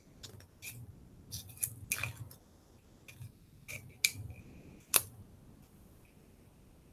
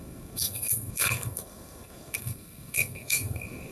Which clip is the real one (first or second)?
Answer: first